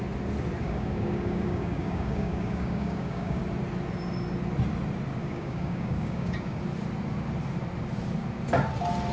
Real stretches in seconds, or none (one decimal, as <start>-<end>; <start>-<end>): 0.0-0.6; 3.4-5.2; 6.6-9.1

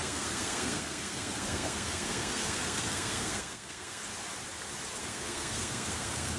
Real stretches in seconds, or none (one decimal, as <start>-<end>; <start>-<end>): 4.0-5.0

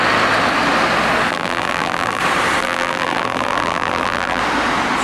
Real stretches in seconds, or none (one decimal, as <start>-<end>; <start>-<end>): 0.0-1.3; 2.2-2.6; 4.4-5.0

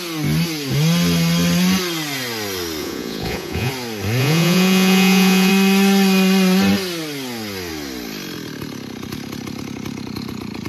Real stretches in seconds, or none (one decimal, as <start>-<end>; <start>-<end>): 0.0-2.8; 3.7-4.2; 5.5-10.7

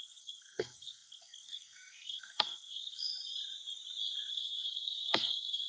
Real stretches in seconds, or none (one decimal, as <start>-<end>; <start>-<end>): 3.1-4.3